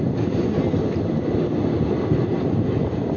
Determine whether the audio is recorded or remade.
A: recorded